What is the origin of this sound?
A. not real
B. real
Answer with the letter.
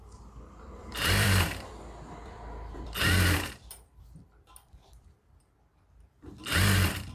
A